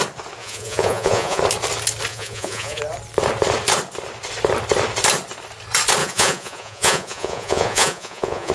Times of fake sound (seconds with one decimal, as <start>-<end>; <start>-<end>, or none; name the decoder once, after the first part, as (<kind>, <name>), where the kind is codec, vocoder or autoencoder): 0.4-1.4 (vocoder, Vocos); 2.1-2.8; 6.0-8.5